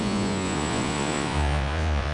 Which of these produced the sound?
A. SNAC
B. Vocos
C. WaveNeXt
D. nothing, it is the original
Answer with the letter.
B